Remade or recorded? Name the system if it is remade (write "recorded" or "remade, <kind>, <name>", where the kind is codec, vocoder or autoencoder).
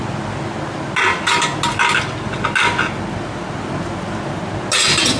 recorded